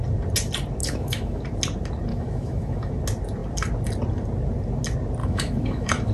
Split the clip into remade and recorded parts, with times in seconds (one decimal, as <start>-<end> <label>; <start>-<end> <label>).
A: 0.0-0.8 recorded; 0.8-1.4 remade; 1.4-2.1 recorded; 2.1-2.9 remade; 2.9-5.2 recorded; 5.2-6.1 remade